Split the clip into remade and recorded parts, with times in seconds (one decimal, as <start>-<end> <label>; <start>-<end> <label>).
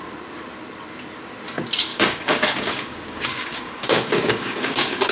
0.0-1.9 recorded; 1.9-5.1 remade